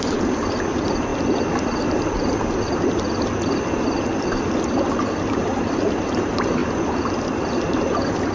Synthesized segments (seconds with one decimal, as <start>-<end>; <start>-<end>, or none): 0.0-1.1; 6.1-6.6